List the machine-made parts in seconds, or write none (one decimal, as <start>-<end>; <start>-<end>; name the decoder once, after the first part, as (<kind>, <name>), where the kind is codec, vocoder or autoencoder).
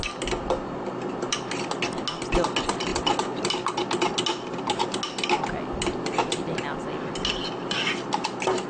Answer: none